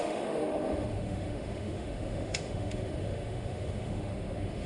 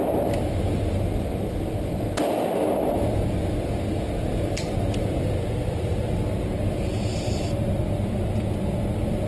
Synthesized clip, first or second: first